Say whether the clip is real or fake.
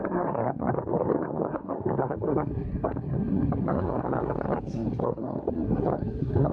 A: fake